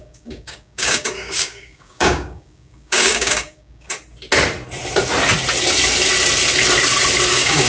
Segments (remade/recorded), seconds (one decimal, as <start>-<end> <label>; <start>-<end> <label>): 0.0-3.9 remade; 3.9-7.3 recorded; 7.3-7.7 remade